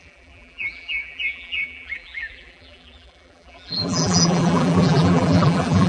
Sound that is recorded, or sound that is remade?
remade